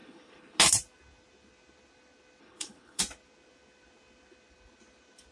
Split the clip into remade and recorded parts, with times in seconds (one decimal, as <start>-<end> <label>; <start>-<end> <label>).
0.0-0.6 remade; 0.6-2.4 recorded; 2.4-3.0 remade; 3.0-5.3 recorded